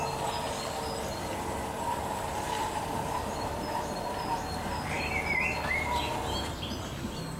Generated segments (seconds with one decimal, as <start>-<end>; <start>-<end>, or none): 2.6-7.0